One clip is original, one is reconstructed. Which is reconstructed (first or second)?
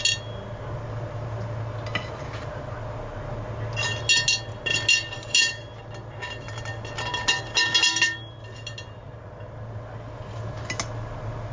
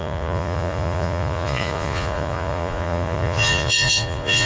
second